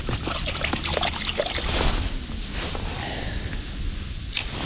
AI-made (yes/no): no